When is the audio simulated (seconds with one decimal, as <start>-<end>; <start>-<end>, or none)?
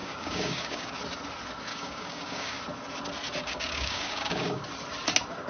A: 0.0-1.0; 1.7-2.6; 3.4-4.6